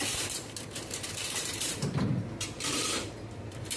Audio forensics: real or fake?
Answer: fake